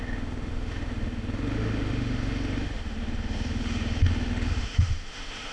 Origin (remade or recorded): remade